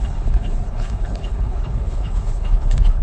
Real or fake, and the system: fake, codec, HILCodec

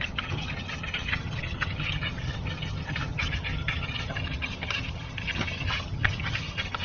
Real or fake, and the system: fake, vocoder, HiFi-GAN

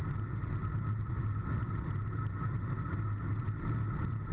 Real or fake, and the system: real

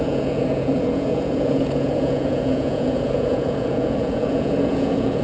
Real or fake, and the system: fake, vocoder, Vocos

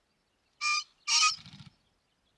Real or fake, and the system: real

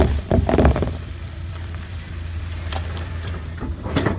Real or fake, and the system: fake, vocoder, BigVGAN v2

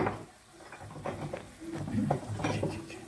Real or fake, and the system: real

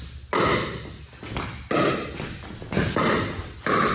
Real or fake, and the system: real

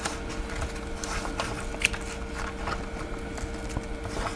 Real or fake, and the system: real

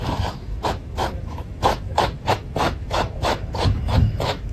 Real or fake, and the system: fake, autoencoder, DAC-VAE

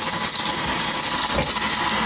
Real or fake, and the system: real